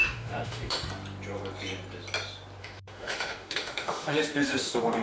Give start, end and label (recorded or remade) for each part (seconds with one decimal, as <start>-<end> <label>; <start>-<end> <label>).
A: 0.0-0.8 remade; 0.8-2.6 recorded; 2.6-5.0 remade